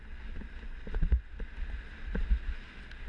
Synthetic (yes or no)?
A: no